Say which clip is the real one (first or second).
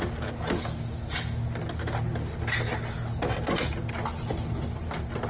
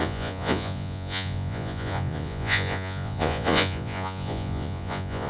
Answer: first